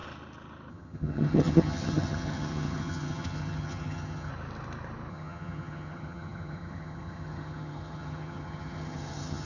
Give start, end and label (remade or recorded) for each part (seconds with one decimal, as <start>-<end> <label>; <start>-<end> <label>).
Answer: 0.0-0.7 recorded; 0.7-4.3 remade; 4.3-5.1 recorded; 5.1-9.5 remade